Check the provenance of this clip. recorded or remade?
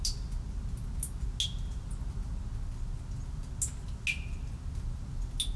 recorded